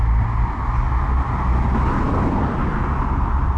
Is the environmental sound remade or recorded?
recorded